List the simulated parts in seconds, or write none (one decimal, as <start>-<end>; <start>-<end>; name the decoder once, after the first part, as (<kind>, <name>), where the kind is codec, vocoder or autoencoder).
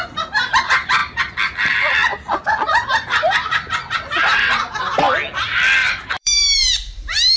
5.8-7.4 (vocoder, BigVGAN v2)